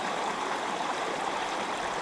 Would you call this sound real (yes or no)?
no